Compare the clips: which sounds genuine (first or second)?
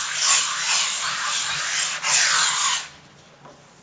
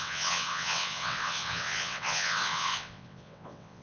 first